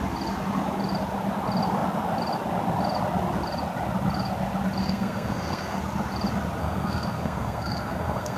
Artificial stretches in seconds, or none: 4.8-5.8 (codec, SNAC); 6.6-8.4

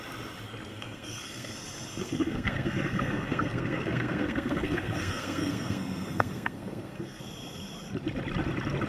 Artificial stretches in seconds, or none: 0.7-1.5 (codec, SNAC); 2.0-7.2

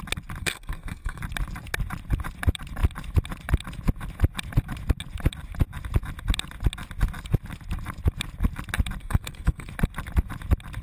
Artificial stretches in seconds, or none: 0.4-1.2 (codec, SNAC); 9.0-9.7

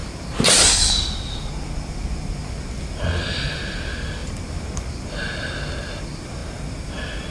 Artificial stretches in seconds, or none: none

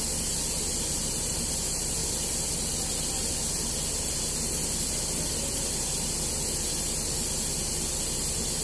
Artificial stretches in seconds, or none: none

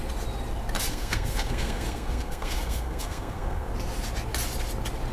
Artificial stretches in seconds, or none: 0.9-3.7 (codec, SNAC)

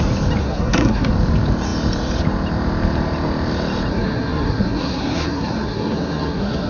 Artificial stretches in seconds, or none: 0.4-1.1 (codec, SNAC); 3.9-6.7

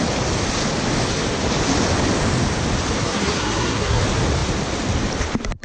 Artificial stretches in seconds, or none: 3.0-4.0 (codec, SNAC)